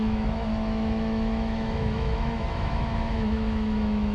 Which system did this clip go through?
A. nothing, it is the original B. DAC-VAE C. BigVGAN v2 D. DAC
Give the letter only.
B